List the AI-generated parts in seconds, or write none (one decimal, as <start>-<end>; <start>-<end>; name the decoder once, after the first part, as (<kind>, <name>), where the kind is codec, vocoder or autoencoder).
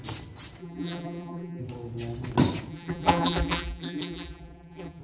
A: 0.6-1.6 (vocoder, BigVGAN v2); 2.7-5.0